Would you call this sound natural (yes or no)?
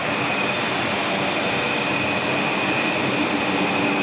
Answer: yes